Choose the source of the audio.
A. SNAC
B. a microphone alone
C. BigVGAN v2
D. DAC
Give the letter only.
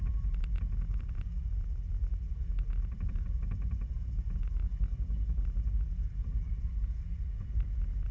B